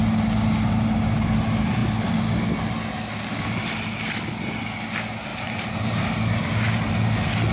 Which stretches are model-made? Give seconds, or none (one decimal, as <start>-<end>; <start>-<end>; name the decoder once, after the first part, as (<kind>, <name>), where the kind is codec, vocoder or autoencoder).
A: 5.3-6.0 (vocoder, BigVGAN v2)